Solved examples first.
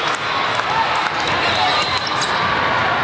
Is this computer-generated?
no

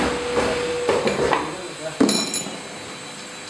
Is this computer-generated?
no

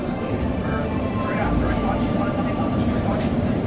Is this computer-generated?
yes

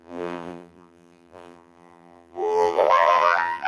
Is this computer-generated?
yes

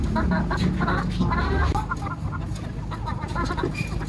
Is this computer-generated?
no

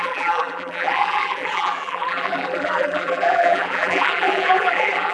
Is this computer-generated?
yes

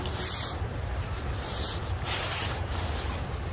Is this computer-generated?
yes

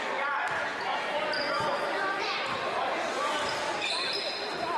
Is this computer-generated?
yes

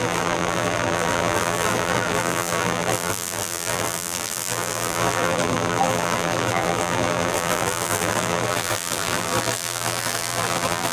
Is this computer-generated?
yes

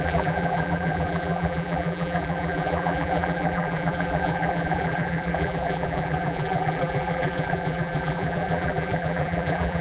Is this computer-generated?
yes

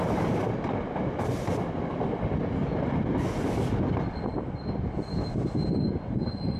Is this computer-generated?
no